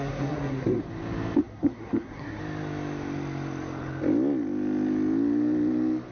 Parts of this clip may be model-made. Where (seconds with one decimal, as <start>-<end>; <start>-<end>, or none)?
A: 0.0-0.8; 1.4-2.4